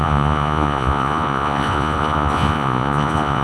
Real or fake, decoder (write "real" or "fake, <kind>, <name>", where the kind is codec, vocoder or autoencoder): fake, vocoder, Vocos